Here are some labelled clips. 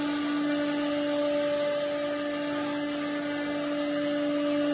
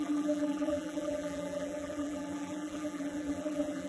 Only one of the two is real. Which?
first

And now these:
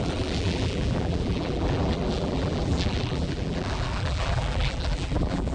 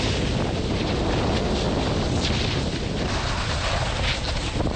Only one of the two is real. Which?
second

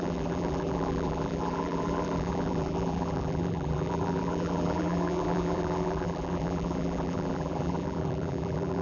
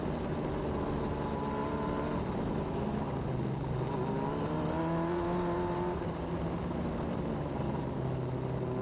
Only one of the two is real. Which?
second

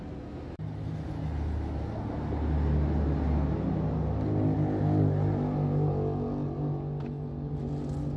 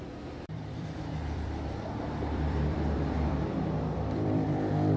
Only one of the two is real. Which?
first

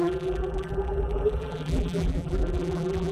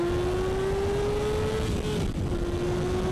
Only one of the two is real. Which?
second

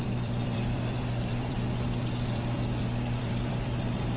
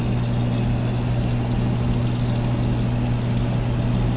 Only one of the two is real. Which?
second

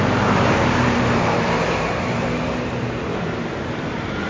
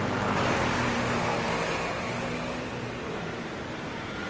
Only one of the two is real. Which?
second